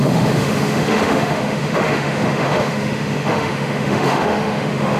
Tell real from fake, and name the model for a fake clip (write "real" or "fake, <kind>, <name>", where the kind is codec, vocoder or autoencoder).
fake, autoencoder, DAC-VAE